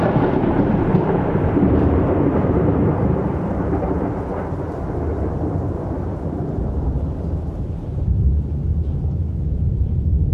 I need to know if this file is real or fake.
fake